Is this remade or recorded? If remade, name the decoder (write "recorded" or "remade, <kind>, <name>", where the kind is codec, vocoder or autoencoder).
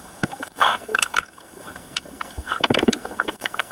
remade, codec, SNAC